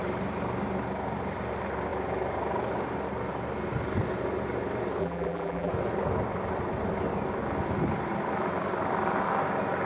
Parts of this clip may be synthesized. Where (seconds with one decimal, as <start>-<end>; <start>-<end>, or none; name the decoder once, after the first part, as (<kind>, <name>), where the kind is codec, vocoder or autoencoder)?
5.0-5.7 (vocoder, BigVGAN v2)